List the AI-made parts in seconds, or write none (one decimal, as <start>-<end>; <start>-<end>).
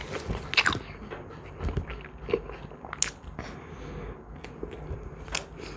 none